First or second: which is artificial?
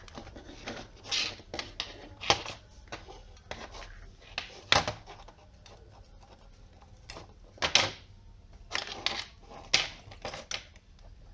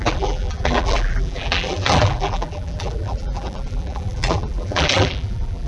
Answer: second